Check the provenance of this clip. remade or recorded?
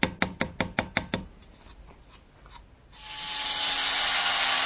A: recorded